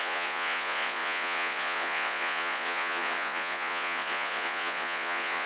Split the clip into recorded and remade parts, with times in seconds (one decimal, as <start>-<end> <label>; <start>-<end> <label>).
0.0-5.5 remade